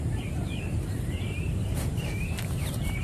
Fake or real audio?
fake